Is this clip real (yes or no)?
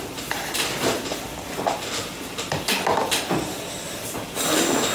yes